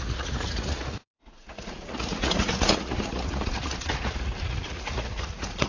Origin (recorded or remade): remade